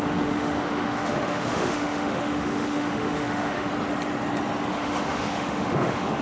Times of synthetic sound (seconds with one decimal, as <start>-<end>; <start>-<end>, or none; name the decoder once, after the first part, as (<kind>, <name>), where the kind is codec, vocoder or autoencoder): 0.0-3.7 (autoencoder, DAC-VAE); 4.7-6.2